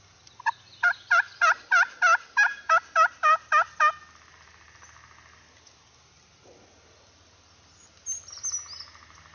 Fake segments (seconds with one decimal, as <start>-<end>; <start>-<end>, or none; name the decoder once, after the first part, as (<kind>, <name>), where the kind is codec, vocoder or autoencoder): none